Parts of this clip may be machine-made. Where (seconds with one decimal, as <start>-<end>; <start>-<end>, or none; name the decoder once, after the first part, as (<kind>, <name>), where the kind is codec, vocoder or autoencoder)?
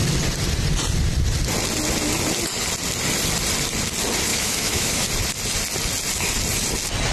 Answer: 4.3-5.1 (autoencoder, DAC-VAE)